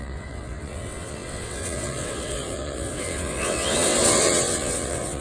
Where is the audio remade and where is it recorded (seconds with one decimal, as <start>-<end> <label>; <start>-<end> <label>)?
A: 0.0-5.2 remade